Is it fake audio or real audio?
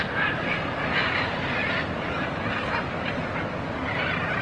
real